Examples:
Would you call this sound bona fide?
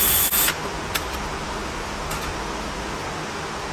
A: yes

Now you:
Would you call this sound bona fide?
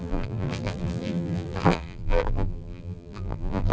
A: no